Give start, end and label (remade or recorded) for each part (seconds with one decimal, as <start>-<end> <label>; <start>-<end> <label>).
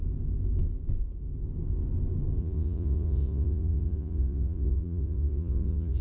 0.0-2.4 recorded; 2.4-6.0 remade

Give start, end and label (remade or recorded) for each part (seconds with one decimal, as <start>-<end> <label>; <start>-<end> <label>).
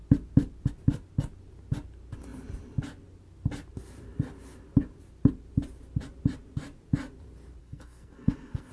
0.0-7.6 recorded; 7.6-8.7 remade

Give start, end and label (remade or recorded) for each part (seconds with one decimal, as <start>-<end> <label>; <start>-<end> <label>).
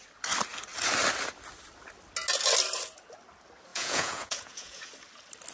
0.0-3.7 recorded; 3.7-4.9 remade; 4.9-5.5 recorded